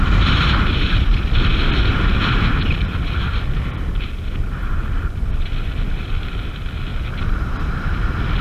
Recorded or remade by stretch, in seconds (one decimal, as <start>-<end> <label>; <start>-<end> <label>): 0.0-8.4 remade